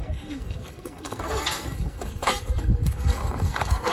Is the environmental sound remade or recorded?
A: remade